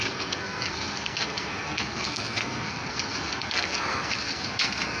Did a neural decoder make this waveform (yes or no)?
yes